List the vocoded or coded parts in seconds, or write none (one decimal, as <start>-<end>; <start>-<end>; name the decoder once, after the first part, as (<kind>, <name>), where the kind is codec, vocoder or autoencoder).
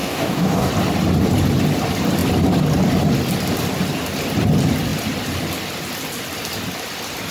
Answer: 0.0-0.7 (codec, DAC)